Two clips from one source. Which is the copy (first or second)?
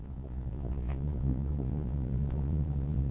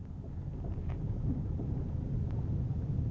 first